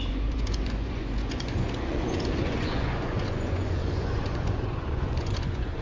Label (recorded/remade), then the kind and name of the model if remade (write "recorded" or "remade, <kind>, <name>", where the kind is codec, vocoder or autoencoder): remade, vocoder, Vocos